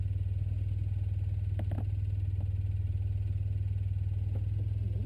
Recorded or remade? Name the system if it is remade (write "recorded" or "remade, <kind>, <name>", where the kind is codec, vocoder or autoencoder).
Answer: recorded